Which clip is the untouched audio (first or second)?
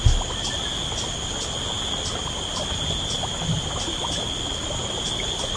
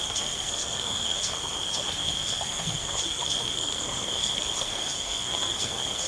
first